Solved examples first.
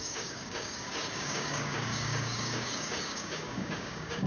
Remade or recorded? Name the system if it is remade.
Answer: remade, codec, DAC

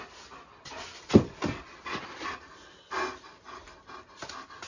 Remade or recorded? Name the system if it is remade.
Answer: recorded